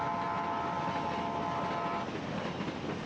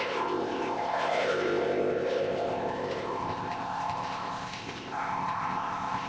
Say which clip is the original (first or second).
first